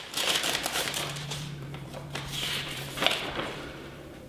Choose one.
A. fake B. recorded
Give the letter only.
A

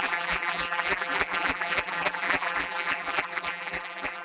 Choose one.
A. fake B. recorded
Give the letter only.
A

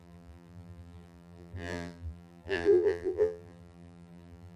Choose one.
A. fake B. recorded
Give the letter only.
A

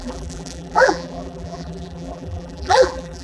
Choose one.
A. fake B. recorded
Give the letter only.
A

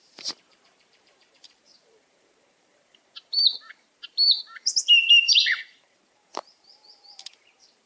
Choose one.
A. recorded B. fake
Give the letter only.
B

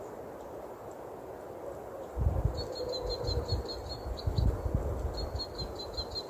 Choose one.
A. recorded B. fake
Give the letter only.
A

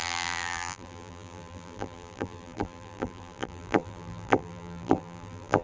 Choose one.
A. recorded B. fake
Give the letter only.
B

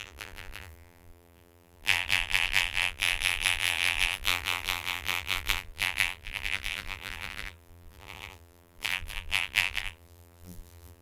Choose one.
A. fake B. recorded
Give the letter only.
A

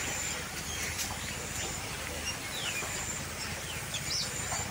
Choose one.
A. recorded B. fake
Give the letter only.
B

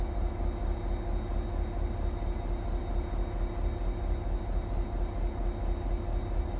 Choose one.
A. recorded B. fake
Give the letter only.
A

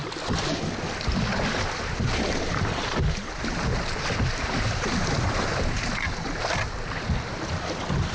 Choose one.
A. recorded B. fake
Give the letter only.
B